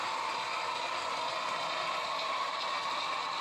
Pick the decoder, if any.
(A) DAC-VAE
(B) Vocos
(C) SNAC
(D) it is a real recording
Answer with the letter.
D